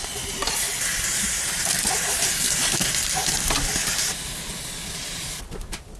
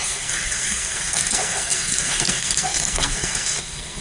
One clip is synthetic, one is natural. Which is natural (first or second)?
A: first